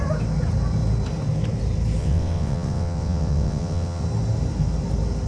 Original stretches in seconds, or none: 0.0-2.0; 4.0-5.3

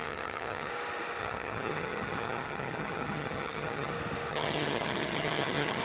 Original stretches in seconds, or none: 0.7-1.2; 3.9-4.3

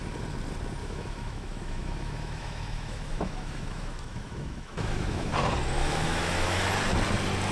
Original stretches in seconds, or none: 0.0-0.8; 5.3-5.8; 6.7-7.5

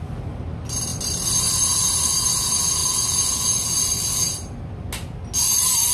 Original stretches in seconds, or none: 0.0-0.9; 2.4-5.9

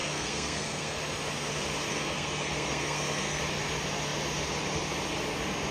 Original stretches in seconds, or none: 1.0-1.9; 3.4-5.7

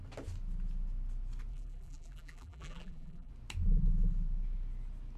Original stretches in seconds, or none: 0.0-1.5; 3.3-5.2

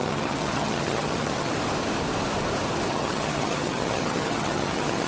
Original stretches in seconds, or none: 1.5-2.9

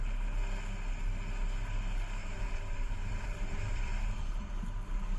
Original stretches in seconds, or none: 0.0-2.2; 4.5-5.2